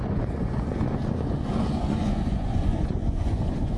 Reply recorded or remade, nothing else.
remade